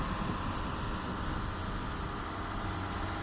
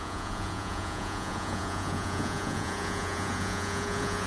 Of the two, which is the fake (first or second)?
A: second